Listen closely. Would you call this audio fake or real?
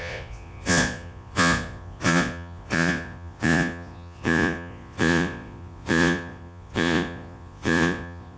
fake